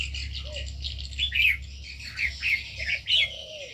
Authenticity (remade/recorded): recorded